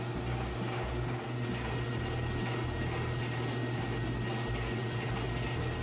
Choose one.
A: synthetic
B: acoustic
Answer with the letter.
B